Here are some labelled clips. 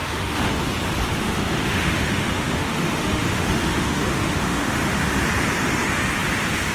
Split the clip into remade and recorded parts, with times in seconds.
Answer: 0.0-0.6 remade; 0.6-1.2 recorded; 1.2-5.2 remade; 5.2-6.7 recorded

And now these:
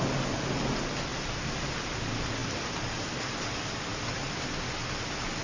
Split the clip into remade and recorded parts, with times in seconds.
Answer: 0.0-5.4 recorded